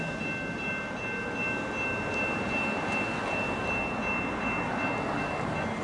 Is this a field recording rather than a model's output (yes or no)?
yes